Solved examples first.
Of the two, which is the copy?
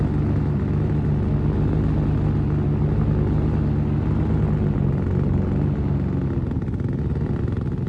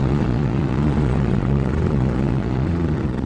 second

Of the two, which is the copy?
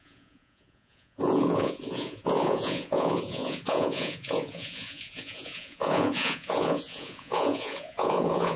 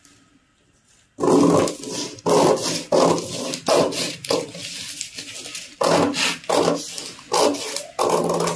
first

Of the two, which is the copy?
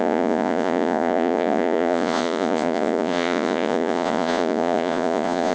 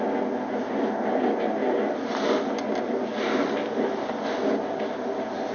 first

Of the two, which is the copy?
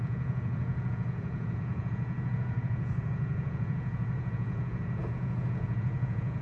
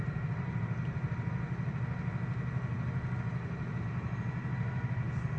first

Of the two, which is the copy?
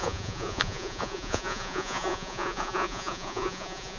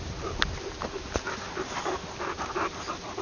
first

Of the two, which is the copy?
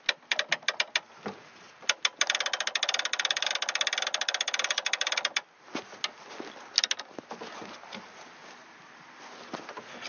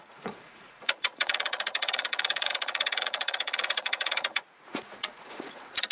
second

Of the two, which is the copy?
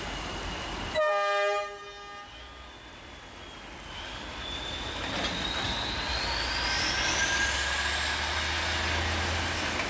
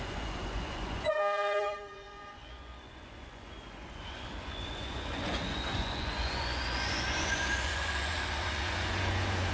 second